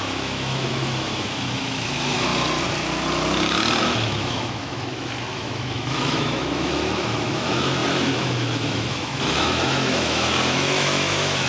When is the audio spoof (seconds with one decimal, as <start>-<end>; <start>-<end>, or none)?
0.0-2.3; 3.8-11.5